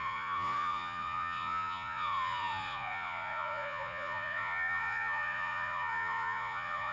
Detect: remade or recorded remade